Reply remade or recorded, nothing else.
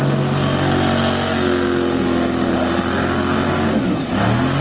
recorded